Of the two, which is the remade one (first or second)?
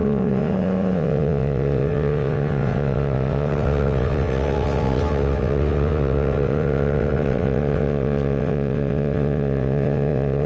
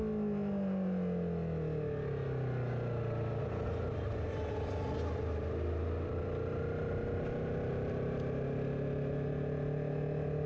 first